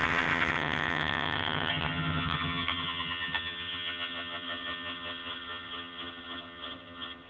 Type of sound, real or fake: fake